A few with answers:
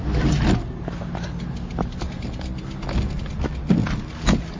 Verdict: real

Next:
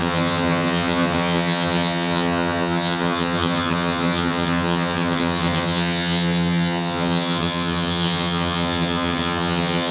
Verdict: fake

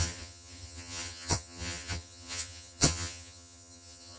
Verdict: fake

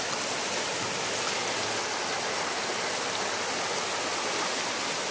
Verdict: real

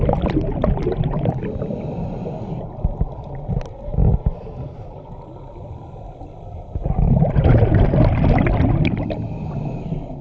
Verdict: real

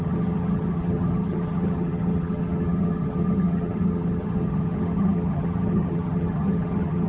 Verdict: fake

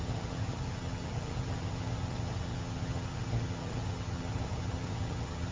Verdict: fake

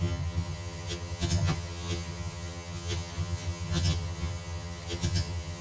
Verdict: fake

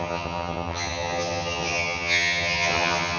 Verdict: fake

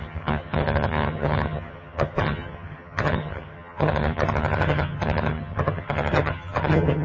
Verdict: fake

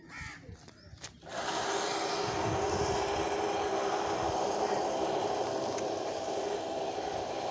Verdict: real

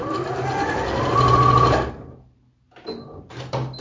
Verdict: real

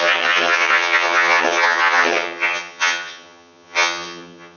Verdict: fake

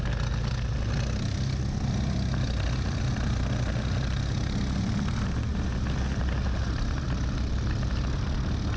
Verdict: real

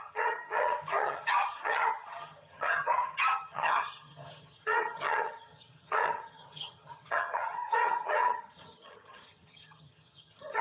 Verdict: fake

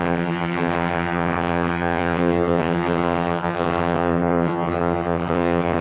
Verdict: fake